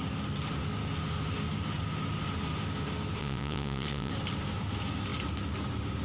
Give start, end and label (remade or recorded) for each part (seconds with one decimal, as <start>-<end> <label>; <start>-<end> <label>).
0.0-3.2 recorded; 3.2-4.1 remade; 4.1-6.0 recorded